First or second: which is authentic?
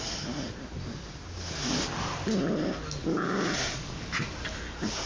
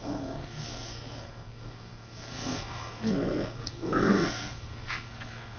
first